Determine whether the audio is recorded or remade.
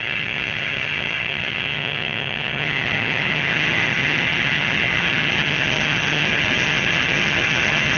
remade